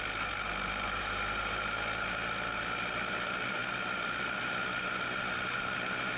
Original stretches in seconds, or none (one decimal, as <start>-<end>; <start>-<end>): 0.0-3.6; 4.4-6.2